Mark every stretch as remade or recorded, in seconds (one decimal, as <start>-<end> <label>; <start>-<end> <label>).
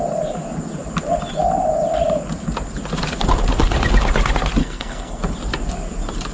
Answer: 0.0-4.6 recorded; 4.6-5.2 remade; 5.2-6.3 recorded